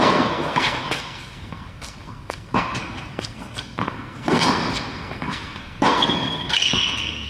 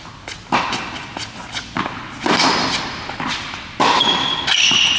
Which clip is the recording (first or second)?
second